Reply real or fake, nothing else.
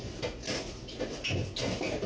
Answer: real